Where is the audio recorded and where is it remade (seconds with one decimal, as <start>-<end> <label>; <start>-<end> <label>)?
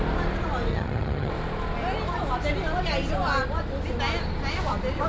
0.0-0.7 recorded; 0.7-1.3 remade; 1.3-5.1 recorded